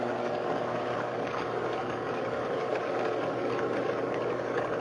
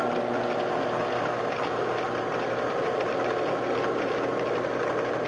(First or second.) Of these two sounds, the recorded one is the second